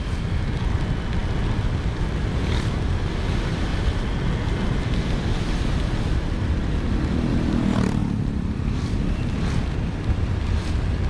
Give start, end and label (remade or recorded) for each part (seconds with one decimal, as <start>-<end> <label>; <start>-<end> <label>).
0.0-1.2 remade; 1.2-2.2 recorded; 2.2-3.7 remade; 3.7-5.6 recorded; 5.6-11.1 remade